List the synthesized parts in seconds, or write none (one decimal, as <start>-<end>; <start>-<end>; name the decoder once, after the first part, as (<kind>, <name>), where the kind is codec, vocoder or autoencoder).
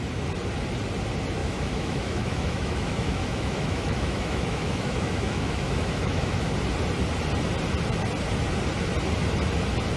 1.4-6.5 (autoencoder, DAC-VAE)